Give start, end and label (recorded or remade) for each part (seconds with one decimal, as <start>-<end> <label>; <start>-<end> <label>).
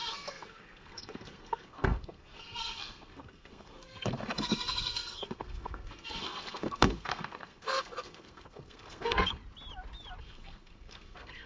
0.0-9.4 remade; 9.4-10.2 recorded; 10.2-11.5 remade